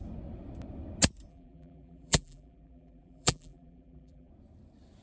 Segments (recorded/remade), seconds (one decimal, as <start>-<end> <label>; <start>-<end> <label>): 0.0-1.3 recorded; 1.3-4.3 remade; 4.3-5.0 recorded